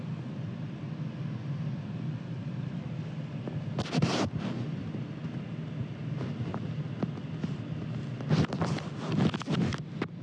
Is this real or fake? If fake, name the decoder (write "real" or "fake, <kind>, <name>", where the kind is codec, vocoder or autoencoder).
real